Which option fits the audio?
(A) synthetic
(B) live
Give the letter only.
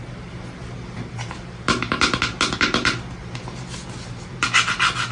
B